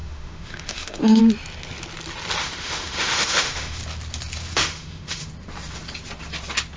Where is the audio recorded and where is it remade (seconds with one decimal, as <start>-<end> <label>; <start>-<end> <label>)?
0.0-1.2 remade; 1.2-2.4 recorded; 2.4-3.8 remade; 3.8-4.5 recorded; 4.5-5.3 remade; 5.3-6.8 recorded